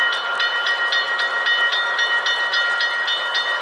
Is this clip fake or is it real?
real